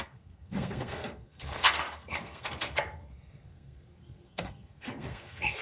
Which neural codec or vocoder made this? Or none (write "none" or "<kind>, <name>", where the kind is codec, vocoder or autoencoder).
codec, SNAC